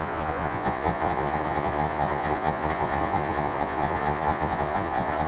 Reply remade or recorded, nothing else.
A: remade